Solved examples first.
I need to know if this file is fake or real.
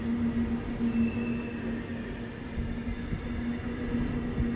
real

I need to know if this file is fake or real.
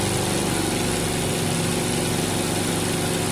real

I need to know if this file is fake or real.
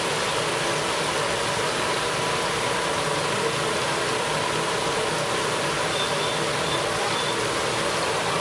real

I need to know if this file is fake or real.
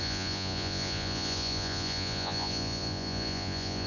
fake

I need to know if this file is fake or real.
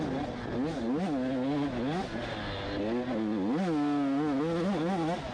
real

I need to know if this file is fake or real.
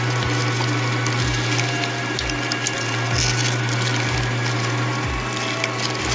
real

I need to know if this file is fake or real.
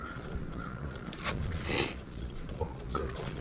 fake